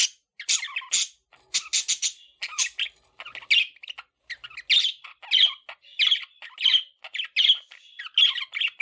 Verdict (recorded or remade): recorded